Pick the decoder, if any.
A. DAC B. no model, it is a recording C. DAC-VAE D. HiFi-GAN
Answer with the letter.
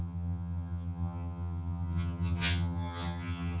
D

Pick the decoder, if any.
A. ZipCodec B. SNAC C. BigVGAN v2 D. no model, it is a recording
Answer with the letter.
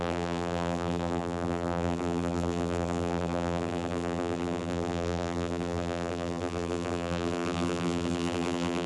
C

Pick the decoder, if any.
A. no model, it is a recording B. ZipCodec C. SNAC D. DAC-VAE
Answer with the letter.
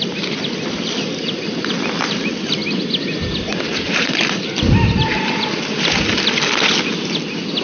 A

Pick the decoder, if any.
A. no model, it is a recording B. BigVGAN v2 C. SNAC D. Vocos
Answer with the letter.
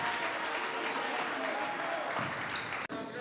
A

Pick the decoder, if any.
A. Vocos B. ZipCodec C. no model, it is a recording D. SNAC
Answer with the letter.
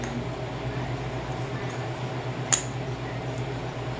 C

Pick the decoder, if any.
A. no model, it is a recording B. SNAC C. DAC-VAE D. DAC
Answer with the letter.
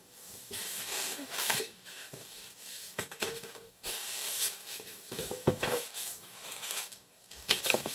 D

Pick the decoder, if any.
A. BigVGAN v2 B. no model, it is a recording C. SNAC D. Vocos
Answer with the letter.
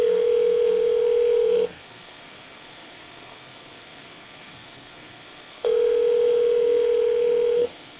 C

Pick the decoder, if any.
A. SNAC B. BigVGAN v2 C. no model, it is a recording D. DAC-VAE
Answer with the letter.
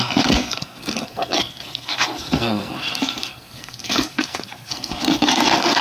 A